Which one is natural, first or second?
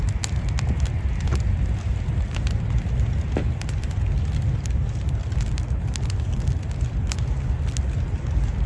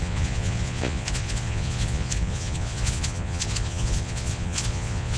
first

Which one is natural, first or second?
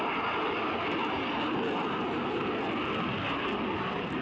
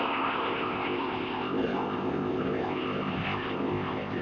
first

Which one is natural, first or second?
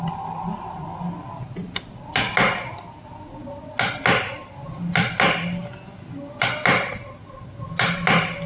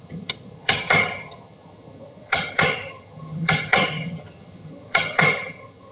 first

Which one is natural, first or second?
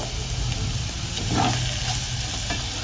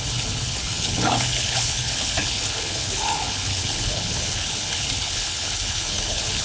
first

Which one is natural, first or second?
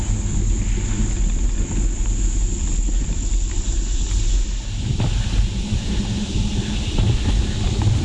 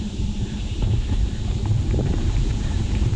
first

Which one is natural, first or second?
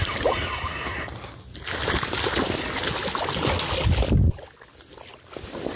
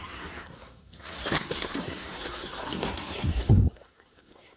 first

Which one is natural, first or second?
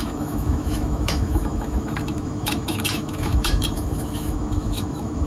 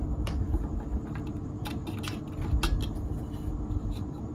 second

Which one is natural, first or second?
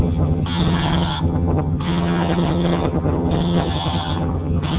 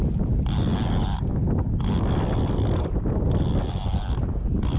second